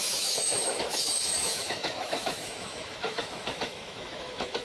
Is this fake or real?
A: fake